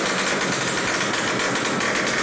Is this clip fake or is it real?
real